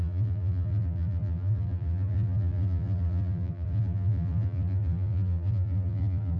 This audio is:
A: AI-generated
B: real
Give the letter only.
A